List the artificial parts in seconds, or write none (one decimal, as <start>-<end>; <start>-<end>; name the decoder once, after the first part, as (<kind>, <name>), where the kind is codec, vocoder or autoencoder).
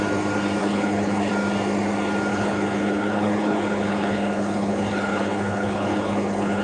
0.6-1.3 (codec, HILCodec); 2.3-6.6